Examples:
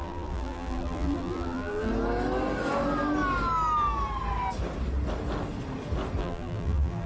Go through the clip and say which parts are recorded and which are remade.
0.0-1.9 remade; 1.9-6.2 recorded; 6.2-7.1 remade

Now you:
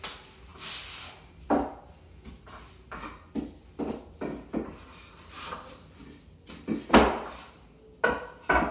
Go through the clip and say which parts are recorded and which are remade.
0.0-8.7 recorded

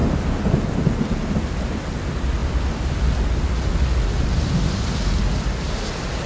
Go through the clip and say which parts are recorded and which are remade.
0.0-6.3 recorded

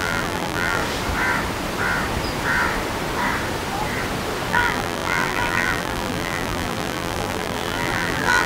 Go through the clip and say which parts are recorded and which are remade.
0.0-0.8 remade; 0.8-4.5 recorded; 4.5-8.5 remade

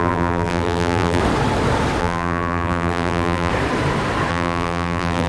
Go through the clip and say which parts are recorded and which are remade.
0.0-1.2 remade; 1.2-2.0 recorded; 2.0-3.5 remade; 3.5-4.3 recorded; 4.3-5.3 remade

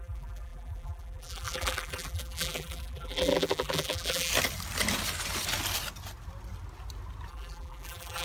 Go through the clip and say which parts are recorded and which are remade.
0.0-4.3 remade; 4.3-7.3 recorded; 7.3-8.2 remade

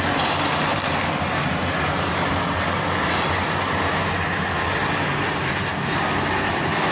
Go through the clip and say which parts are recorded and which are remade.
0.0-0.7 recorded; 0.7-1.3 remade; 1.3-4.8 recorded; 4.8-5.7 remade; 5.7-6.9 recorded

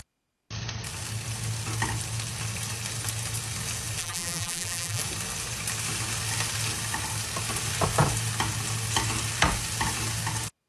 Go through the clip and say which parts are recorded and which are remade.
0.0-4.0 recorded; 4.0-5.0 remade; 5.0-10.7 recorded